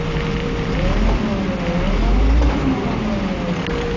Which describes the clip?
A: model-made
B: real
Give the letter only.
B